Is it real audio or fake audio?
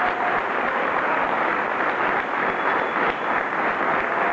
real